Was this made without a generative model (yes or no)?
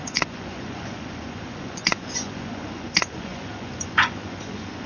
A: no